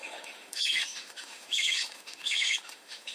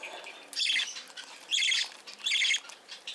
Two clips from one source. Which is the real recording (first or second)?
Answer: second